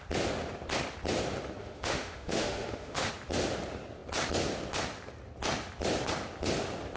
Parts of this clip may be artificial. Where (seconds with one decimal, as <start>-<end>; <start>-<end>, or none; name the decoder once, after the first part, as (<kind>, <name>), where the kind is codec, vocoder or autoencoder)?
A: 1.6-3.1 (autoencoder, DAC-VAE)